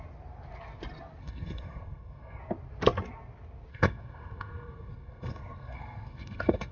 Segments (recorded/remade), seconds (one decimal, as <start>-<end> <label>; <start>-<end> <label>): 0.0-1.2 recorded; 1.2-2.4 remade; 2.4-3.7 recorded; 3.7-6.7 remade